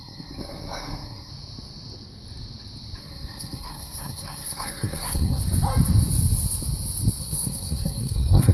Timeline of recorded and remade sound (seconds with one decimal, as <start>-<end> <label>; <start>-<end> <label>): 0.0-1.3 remade; 1.3-3.0 recorded; 3.0-5.4 remade; 5.4-7.2 recorded; 7.2-8.5 remade